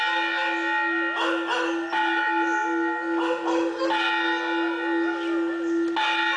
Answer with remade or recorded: recorded